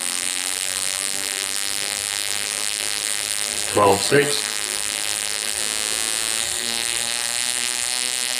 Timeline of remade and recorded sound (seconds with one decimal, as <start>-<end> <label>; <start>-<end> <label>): 0.0-5.6 remade; 5.6-6.4 recorded; 6.4-8.4 remade